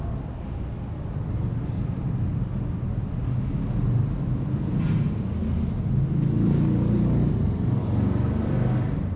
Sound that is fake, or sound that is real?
real